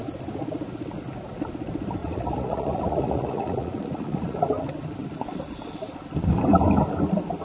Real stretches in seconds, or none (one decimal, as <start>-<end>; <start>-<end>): 0.0-2.0; 4.4-7.4